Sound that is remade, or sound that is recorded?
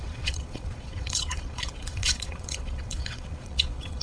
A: remade